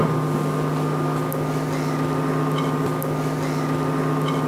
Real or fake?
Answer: real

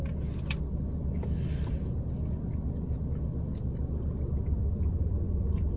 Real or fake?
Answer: real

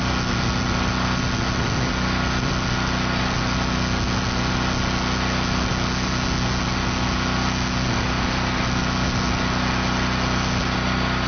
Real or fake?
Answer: real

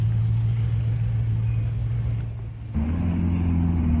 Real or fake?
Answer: real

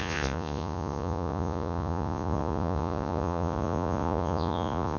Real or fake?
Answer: fake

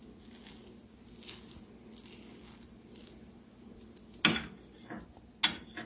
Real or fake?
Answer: real